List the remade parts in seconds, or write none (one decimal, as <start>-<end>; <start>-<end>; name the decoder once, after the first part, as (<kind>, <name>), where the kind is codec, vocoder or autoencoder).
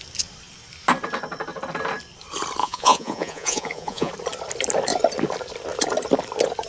2.6-4.1 (vocoder, Vocos)